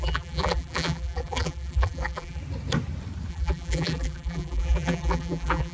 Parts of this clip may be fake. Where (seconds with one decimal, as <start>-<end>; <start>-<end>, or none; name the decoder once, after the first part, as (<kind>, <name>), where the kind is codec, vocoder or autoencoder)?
0.0-2.4 (vocoder, BigVGAN v2); 3.3-5.7